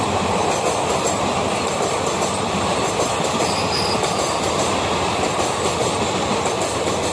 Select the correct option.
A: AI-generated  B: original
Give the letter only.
B